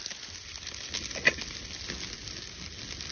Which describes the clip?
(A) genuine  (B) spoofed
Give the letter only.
A